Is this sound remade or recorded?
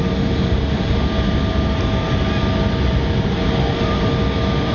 recorded